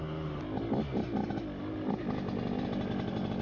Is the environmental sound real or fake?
real